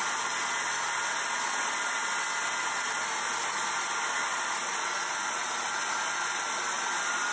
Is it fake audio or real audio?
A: real